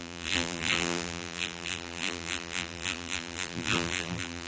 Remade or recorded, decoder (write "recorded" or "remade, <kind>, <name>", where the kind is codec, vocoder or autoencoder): remade, vocoder, BigVGAN v2